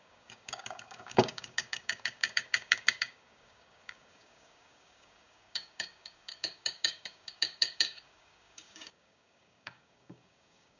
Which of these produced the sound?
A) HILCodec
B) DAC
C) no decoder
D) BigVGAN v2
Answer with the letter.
B